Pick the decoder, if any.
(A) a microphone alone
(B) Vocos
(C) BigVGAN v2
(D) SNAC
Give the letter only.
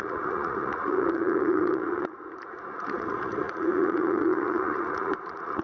B